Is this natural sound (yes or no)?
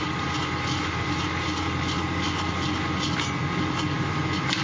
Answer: yes